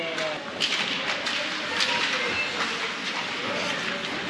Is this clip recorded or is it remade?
recorded